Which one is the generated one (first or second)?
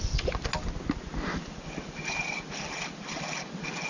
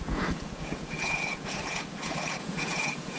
second